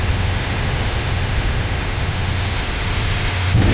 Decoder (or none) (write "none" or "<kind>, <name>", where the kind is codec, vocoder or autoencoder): autoencoder, DAC-VAE